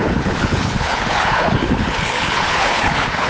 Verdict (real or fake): fake